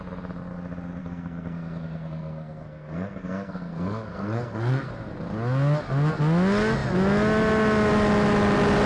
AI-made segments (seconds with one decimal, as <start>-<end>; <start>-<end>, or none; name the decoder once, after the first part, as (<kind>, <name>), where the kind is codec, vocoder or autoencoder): 1.0-4.9 (codec, SNAC)